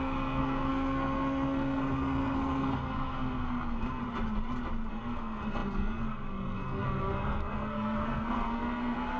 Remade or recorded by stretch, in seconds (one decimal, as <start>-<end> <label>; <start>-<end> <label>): 0.0-4.0 remade; 4.0-4.9 recorded; 4.9-9.2 remade